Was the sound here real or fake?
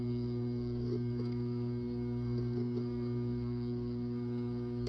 fake